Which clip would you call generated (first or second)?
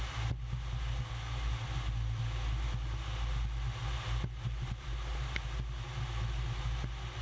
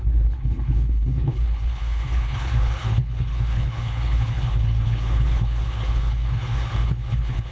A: second